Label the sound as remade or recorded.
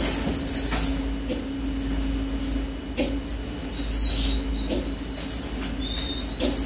recorded